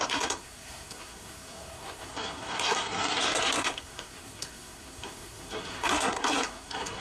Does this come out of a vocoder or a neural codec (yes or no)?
yes